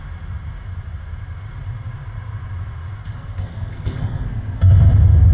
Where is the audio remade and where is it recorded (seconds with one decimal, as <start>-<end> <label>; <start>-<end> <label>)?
0.0-3.0 recorded; 3.0-4.7 remade; 4.7-5.3 recorded